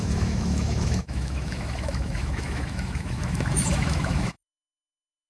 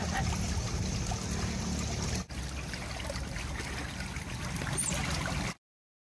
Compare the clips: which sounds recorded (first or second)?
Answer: second